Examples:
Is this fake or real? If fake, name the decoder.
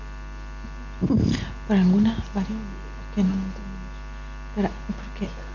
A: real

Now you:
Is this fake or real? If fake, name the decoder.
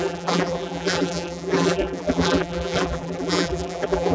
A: fake, vocoder, BigVGAN v2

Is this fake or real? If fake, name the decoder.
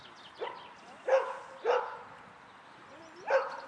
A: real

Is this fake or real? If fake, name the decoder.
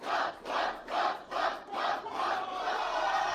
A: fake, vocoder, BigVGAN v2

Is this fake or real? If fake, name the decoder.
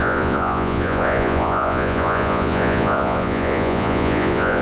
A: fake, vocoder, Vocos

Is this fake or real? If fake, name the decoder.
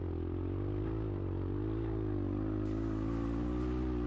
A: real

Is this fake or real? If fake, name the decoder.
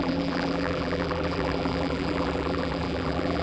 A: fake, vocoder, BigVGAN v2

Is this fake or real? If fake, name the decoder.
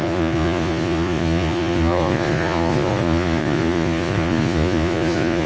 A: fake, vocoder, Vocos